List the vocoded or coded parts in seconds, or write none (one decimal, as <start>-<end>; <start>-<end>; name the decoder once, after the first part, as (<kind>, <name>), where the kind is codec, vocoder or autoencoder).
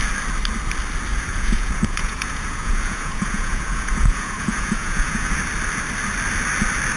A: 1.1-5.3 (vocoder, Vocos)